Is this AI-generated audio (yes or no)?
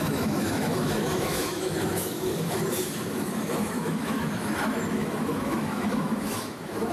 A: yes